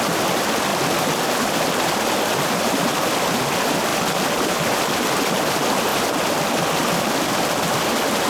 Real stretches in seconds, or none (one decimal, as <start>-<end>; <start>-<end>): 0.0-8.3